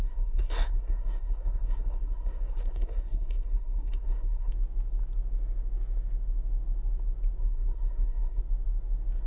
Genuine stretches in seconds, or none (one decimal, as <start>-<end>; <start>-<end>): 4.5-7.4; 8.4-9.3